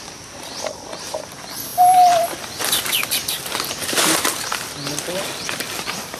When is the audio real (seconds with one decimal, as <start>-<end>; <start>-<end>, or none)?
0.0-6.2